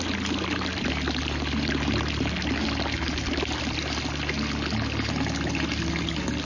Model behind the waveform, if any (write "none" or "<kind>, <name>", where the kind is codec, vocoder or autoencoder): none